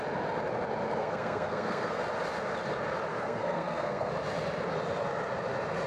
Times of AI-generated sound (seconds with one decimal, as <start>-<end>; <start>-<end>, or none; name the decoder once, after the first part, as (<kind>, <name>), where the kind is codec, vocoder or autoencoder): 1.0-2.0 (codec, SNAC); 3.1-4.1